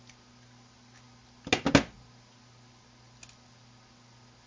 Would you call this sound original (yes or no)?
yes